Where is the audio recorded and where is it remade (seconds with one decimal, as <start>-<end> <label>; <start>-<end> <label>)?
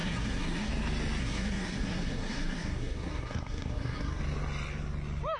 0.0-0.7 remade; 0.7-1.2 recorded; 1.2-4.2 remade; 4.2-5.4 recorded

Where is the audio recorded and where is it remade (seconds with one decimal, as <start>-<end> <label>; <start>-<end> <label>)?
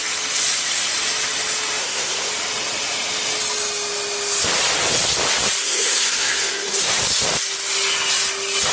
0.0-1.8 recorded; 1.8-2.3 remade; 2.3-5.6 recorded; 5.6-7.0 remade; 7.0-8.7 recorded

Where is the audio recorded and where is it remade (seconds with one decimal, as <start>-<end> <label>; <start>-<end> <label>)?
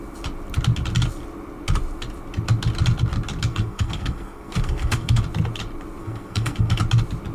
0.0-3.5 recorded; 3.5-5.2 remade; 5.2-6.0 recorded; 6.0-6.8 remade; 6.8-7.3 recorded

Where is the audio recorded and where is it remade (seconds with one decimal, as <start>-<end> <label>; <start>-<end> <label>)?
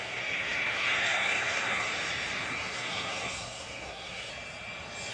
0.0-1.9 remade; 1.9-2.5 recorded; 2.5-4.3 remade; 4.3-5.1 recorded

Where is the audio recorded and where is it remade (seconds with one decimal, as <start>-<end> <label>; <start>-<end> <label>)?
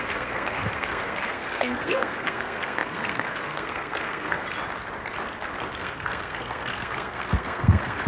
0.0-4.4 remade; 4.4-5.8 recorded; 5.8-8.1 remade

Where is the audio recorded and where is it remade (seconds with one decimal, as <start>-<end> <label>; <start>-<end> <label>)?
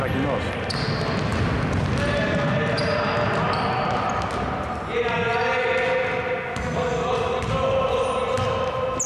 0.0-6.6 recorded; 6.6-7.1 remade; 7.1-9.1 recorded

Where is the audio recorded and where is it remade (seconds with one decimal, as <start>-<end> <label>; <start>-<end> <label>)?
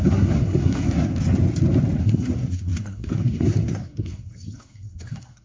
0.0-1.1 remade; 1.1-2.0 recorded; 2.0-5.4 remade